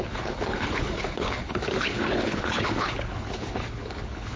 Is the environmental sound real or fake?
fake